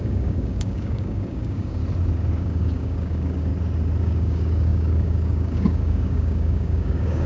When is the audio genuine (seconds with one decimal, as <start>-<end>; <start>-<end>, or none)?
1.8-2.4; 3.5-4.0